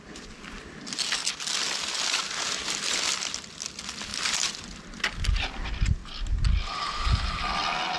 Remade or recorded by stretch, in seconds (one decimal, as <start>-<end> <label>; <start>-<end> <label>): 0.0-8.0 recorded